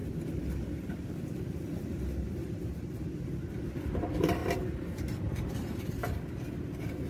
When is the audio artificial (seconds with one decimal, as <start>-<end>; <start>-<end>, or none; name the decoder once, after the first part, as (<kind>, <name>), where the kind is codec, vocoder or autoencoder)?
0.9-4.4 (vocoder, BigVGAN v2); 4.9-7.1